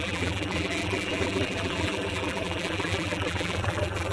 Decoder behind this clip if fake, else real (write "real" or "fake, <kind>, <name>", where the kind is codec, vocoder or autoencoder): fake, vocoder, BigVGAN v2